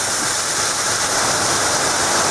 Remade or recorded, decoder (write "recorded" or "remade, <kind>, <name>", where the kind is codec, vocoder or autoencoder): recorded